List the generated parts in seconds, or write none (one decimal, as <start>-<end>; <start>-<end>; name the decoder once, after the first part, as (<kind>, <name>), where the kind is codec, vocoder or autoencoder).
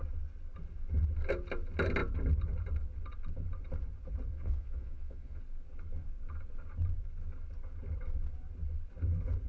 4.3-5.4 (vocoder, Vocos)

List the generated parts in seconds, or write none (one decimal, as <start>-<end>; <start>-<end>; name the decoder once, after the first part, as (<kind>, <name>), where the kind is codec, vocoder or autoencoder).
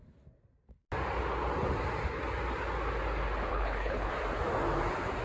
3.5-4.1 (codec, HILCodec)